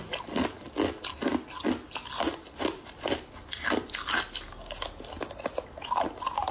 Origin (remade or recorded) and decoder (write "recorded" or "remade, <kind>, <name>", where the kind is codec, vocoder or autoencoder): recorded